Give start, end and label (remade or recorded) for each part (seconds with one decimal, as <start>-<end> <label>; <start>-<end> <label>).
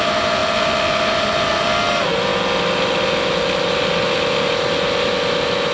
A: 0.0-5.7 recorded